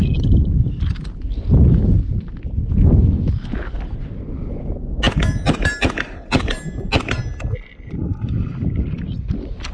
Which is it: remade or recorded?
recorded